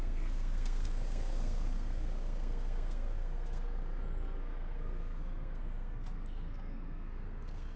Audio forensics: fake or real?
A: fake